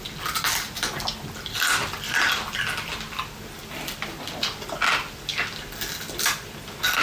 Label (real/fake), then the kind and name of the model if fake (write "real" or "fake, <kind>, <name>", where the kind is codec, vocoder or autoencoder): real